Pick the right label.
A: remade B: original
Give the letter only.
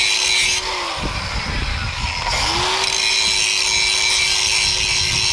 B